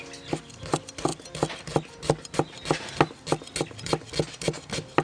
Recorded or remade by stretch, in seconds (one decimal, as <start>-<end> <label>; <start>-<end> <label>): 0.0-5.0 recorded